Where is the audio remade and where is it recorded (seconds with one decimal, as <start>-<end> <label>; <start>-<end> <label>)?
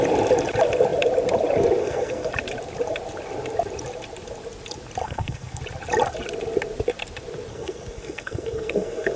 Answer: 0.0-1.8 recorded; 1.8-2.3 remade; 2.3-5.0 recorded; 5.0-5.6 remade; 5.6-7.5 recorded; 7.5-9.2 remade